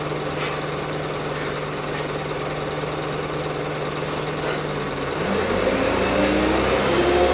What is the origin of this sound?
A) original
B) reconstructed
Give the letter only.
A